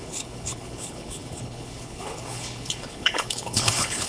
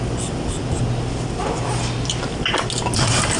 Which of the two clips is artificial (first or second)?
first